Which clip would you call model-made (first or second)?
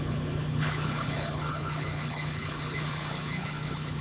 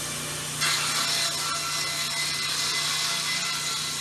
first